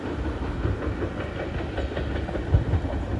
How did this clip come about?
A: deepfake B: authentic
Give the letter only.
B